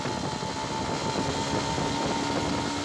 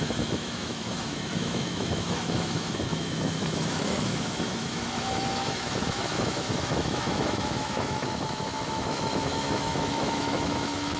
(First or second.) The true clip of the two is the first